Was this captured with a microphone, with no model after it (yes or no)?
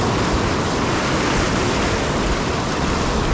yes